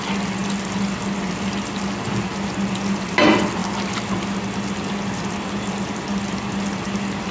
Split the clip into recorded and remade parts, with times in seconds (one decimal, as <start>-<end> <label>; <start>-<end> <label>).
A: 0.0-7.3 recorded